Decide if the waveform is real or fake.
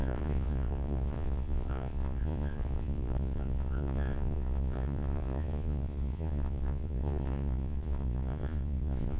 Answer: fake